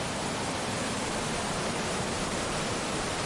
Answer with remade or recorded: recorded